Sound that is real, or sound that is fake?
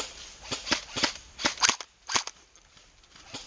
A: real